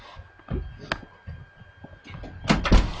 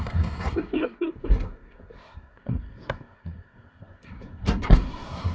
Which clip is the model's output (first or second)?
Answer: second